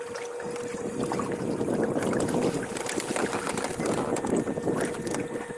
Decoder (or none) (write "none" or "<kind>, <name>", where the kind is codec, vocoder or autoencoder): none